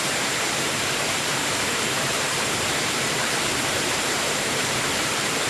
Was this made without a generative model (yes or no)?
no